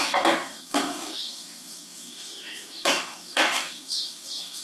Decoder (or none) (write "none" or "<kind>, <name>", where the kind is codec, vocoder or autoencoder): codec, DAC